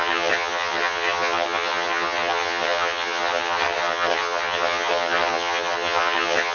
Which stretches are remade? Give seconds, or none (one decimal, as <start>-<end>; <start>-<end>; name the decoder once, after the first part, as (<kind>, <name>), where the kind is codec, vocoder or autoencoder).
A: 0.0-6.5 (vocoder, HiFi-GAN)